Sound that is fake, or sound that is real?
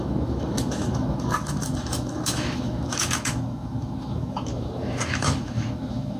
fake